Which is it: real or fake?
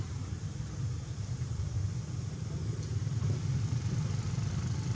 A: real